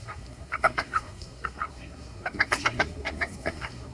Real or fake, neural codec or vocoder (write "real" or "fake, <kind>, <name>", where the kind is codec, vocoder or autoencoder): fake, codec, SNAC